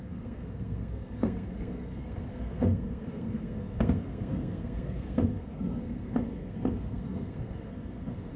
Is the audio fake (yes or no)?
yes